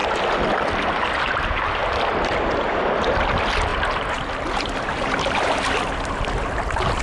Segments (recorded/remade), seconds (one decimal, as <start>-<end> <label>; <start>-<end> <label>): 0.0-1.1 remade; 1.1-3.7 recorded; 3.7-6.1 remade; 6.1-7.0 recorded